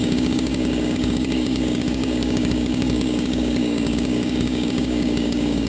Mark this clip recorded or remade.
remade